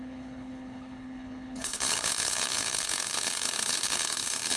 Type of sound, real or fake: fake